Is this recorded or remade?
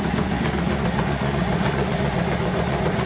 remade